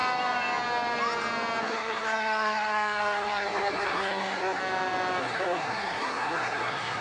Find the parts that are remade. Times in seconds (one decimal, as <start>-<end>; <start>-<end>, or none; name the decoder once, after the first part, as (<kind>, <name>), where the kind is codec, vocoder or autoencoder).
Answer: 1.6-4.6 (codec, SNAC); 5.2-7.0